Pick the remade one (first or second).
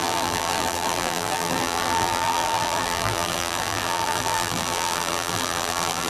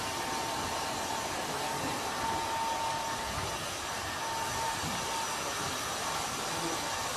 first